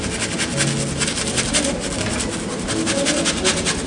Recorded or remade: recorded